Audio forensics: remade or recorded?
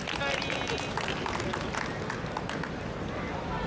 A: recorded